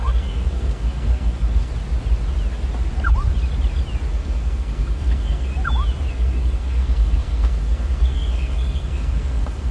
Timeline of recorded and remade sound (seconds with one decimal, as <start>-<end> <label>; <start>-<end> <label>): 0.0-1.7 remade; 1.7-4.1 recorded; 4.1-5.5 remade; 5.5-6.1 recorded; 6.1-9.7 remade